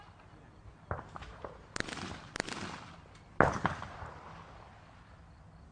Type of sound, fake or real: real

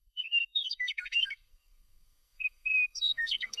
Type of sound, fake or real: fake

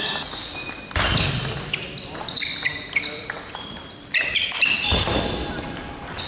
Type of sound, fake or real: real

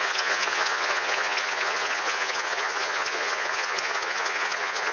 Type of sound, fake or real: fake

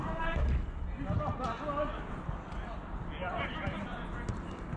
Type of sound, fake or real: real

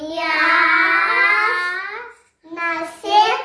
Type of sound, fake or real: real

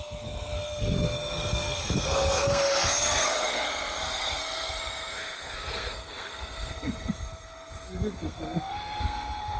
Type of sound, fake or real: fake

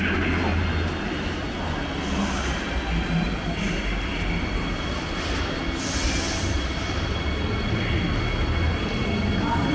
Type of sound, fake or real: real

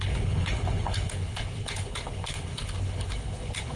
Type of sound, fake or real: fake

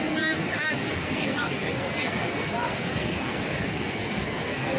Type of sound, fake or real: fake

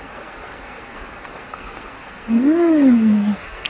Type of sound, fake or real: fake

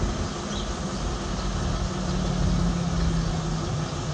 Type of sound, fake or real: real